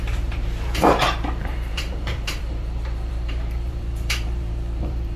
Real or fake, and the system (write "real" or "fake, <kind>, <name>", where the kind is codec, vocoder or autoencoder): fake, vocoder, BigVGAN v2